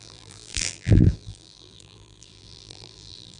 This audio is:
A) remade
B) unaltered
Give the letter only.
A